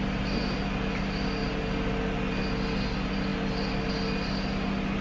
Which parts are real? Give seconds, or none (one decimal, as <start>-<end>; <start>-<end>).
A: 0.0-5.0